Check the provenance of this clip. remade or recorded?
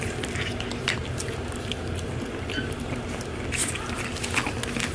recorded